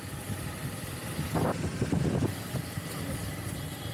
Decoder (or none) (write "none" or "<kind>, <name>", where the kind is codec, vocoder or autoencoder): none